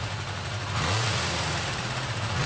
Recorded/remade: remade